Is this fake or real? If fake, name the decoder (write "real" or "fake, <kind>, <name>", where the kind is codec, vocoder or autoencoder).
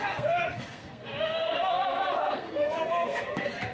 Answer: fake, codec, SNAC